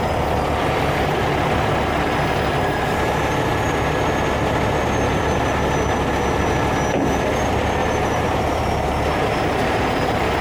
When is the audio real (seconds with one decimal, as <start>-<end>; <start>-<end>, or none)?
0.0-7.8; 10.0-10.4